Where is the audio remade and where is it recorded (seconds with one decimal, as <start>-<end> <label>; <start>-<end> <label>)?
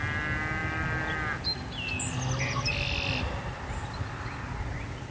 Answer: 0.0-5.1 recorded